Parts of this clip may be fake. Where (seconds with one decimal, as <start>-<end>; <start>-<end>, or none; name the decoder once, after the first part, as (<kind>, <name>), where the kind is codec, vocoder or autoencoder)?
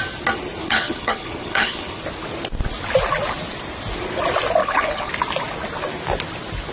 0.6-2.0 (codec, HILCodec); 4.6-5.1